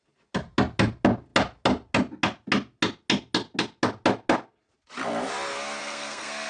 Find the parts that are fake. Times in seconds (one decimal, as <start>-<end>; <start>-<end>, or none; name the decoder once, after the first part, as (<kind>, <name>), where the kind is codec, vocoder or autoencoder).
5.8-6.5 (codec, SNAC)